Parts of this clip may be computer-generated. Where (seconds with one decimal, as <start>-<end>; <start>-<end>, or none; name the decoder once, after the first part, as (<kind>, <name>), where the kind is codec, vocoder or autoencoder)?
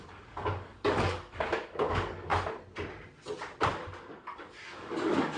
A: 0.0-2.3 (codec, DAC); 4.0-5.4